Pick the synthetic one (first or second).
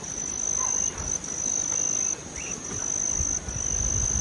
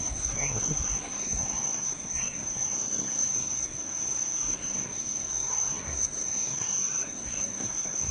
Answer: second